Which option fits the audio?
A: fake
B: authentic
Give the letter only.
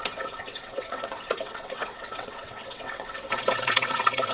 A